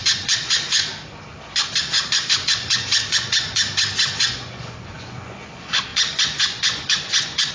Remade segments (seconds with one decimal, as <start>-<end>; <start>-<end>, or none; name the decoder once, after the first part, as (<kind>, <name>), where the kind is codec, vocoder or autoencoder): 0.0-0.8 (vocoder, Vocos); 1.8-3.6; 4.2-7.5